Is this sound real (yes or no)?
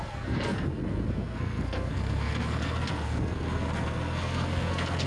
no